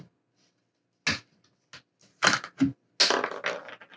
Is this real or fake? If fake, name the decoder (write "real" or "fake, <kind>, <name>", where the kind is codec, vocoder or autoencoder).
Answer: real